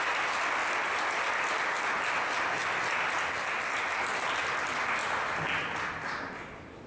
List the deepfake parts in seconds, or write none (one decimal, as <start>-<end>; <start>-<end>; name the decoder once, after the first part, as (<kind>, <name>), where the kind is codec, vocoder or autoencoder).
none

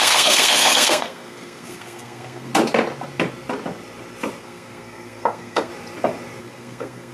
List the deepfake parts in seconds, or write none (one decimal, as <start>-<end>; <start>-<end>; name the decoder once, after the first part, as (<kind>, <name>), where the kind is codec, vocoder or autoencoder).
0.0-2.5 (codec, SNAC); 4.4-5.7; 6.4-7.1

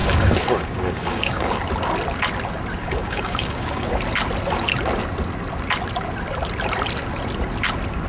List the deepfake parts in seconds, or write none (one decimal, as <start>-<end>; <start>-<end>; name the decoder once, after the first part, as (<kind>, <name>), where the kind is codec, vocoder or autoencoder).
0.0-1.6 (codec, DAC); 2.8-4.0

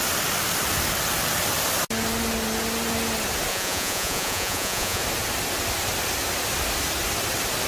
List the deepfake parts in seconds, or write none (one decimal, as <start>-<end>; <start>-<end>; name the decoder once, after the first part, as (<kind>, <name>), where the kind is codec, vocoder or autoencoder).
3.5-5.0 (vocoder, Vocos)

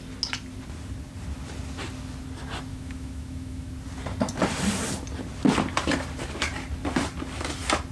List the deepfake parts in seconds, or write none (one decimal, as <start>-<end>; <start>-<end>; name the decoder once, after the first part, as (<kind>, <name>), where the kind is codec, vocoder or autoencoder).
2.7-3.7 (autoencoder, DAC-VAE)

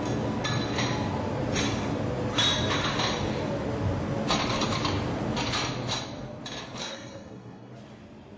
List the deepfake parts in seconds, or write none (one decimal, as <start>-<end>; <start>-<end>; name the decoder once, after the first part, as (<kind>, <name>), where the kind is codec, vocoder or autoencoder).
6.8-7.7 (codec, SNAC)